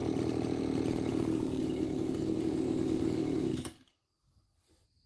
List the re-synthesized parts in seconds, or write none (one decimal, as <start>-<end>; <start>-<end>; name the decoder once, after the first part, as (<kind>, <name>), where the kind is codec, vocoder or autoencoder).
1.1-4.2 (codec, DAC)

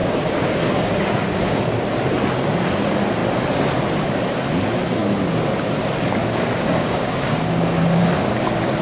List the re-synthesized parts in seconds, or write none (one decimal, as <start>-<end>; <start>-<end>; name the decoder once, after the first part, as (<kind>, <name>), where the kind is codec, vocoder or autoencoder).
0.0-1.6 (codec, DAC); 5.0-5.7; 6.2-8.0